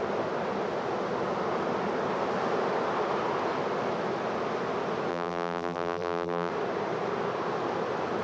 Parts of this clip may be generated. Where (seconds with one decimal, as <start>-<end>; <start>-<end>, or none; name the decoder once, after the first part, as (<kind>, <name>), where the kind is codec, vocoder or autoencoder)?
5.1-6.5 (vocoder, BigVGAN v2)